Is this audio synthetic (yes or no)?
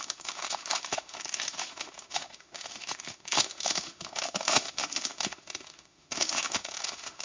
yes